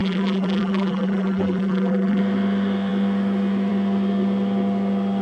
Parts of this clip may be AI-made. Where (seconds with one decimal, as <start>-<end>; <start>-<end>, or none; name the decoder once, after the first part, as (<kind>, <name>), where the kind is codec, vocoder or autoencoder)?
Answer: 0.0-2.2 (vocoder, BigVGAN v2)